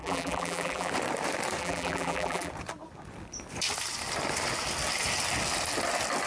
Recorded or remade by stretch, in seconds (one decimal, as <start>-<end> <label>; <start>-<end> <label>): 0.0-0.9 remade; 0.9-1.6 recorded; 1.6-2.5 remade; 2.5-6.3 recorded